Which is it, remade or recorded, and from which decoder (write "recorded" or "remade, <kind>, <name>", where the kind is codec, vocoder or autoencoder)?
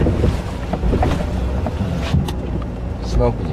recorded